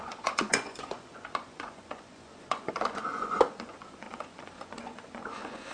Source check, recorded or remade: remade